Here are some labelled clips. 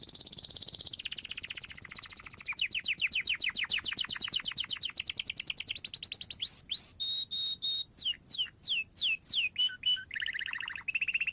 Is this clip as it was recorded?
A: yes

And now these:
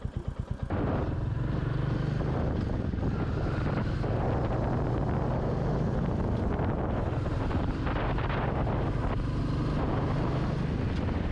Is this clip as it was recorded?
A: yes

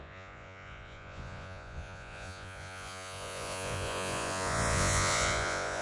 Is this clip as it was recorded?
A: no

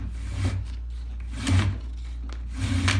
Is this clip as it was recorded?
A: yes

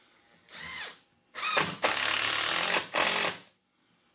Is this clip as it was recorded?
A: yes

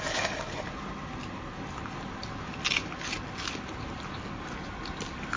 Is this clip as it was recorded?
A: yes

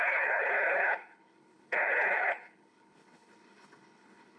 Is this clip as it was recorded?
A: no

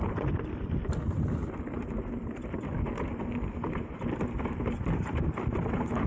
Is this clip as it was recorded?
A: yes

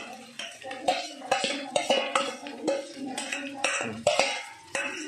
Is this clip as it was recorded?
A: no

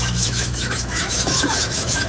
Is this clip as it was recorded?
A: no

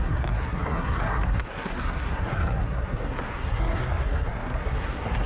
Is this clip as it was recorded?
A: no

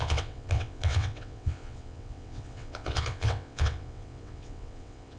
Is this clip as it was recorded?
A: no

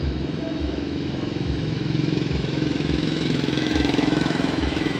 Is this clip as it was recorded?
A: no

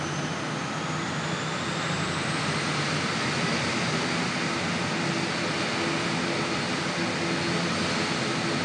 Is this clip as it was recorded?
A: yes